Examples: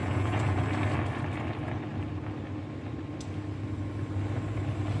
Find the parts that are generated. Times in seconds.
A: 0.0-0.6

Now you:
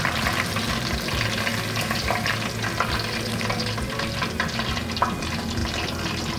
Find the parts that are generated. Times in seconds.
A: none